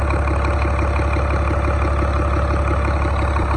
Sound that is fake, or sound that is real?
real